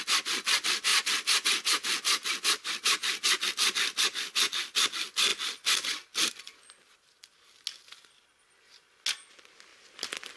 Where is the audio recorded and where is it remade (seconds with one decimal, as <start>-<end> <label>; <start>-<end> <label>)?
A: 0.0-10.4 recorded